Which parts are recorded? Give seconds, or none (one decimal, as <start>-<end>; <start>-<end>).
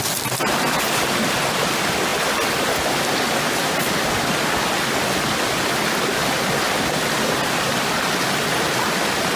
0.0-9.4